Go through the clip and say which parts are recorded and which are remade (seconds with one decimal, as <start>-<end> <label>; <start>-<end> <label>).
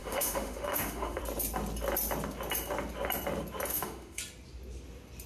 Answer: 0.0-1.2 remade; 1.2-3.7 recorded; 3.7-4.2 remade; 4.2-5.3 recorded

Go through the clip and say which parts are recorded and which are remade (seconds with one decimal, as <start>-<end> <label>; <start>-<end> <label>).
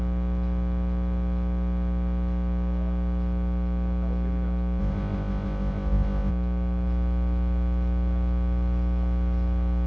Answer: 0.0-4.8 recorded; 4.8-6.3 remade; 6.3-9.9 recorded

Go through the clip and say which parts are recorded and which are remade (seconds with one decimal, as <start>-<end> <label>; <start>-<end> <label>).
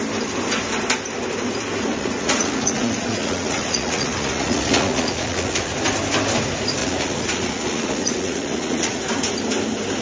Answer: 0.0-1.9 recorded; 1.9-5.7 remade; 5.7-6.8 recorded; 6.8-9.0 remade; 9.0-10.0 recorded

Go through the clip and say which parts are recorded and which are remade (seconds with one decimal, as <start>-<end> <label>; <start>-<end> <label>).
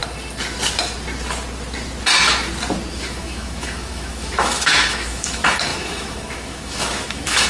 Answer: 0.0-2.9 recorded; 2.9-7.5 remade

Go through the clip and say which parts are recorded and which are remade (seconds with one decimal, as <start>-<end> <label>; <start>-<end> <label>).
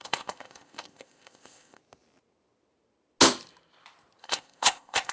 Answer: 0.0-1.8 remade; 1.8-4.2 recorded; 4.2-5.1 remade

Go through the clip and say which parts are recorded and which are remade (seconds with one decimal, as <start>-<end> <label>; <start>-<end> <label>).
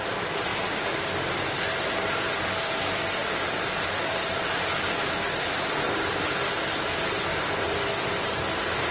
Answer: 0.0-8.9 recorded